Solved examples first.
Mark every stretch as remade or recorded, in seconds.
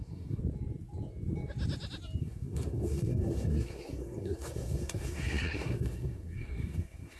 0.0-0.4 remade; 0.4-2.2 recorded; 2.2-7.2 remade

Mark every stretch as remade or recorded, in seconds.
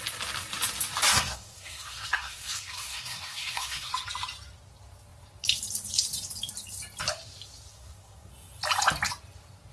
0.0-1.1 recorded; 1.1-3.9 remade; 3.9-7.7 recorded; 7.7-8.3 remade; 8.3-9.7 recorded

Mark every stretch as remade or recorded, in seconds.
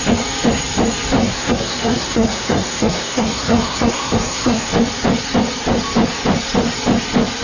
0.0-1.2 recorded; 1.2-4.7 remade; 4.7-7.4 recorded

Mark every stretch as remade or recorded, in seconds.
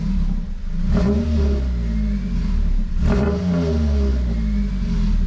0.0-5.3 recorded